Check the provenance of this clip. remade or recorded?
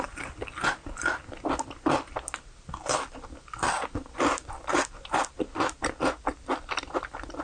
recorded